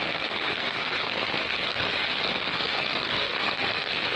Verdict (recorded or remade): remade